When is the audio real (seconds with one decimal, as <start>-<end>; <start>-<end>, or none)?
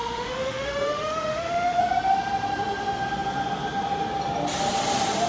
1.8-5.3